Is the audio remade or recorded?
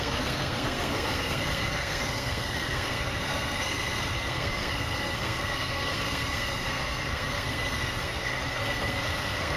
remade